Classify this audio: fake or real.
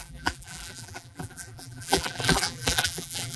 fake